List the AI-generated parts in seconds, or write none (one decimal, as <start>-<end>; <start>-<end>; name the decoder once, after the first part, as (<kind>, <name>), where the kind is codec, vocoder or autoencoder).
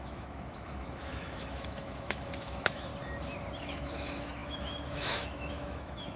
0.0-2.9 (autoencoder, DAC-VAE); 3.6-6.2